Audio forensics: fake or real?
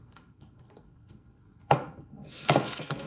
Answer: fake